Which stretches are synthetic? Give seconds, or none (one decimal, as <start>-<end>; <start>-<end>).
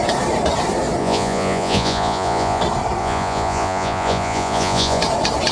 1.0-2.6; 3.0-5.0